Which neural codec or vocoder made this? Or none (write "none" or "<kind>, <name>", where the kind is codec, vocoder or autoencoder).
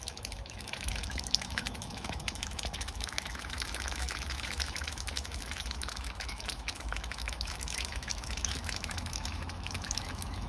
autoencoder, DAC-VAE